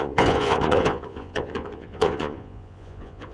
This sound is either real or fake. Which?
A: fake